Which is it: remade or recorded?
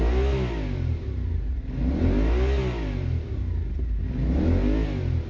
recorded